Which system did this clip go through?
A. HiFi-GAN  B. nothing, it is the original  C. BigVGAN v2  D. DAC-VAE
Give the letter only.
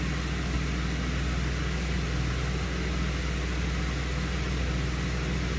B